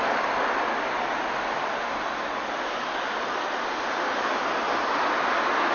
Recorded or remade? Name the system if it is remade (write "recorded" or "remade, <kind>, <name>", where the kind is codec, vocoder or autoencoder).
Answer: recorded